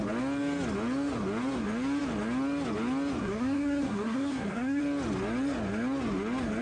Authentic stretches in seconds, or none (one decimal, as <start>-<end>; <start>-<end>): 0.0-3.2; 4.8-6.6